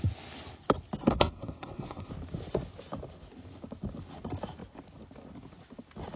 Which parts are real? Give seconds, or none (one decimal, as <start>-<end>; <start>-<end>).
0.0-1.0; 2.1-6.2